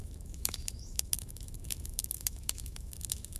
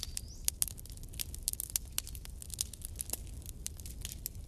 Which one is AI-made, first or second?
first